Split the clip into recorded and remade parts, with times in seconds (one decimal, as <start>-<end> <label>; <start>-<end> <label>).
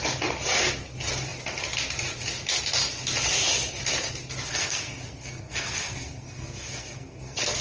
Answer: 0.0-4.5 recorded; 4.5-7.6 remade